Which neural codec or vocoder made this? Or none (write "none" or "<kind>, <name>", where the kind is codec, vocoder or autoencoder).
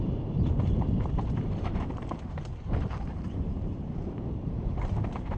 vocoder, BigVGAN v2